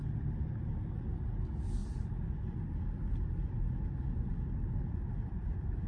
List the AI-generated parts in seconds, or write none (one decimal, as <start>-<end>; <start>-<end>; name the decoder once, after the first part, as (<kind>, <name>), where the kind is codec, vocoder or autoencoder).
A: none